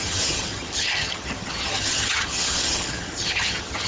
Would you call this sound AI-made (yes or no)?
yes